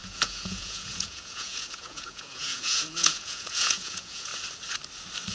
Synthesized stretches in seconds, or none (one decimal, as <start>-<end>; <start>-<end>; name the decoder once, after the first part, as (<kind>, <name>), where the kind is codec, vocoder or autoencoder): 0.0-4.3 (vocoder, Vocos)